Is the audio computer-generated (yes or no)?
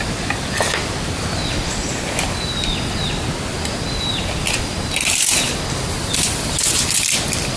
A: no